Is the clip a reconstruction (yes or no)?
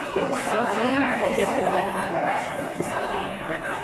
yes